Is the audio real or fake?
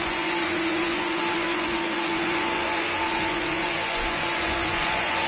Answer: fake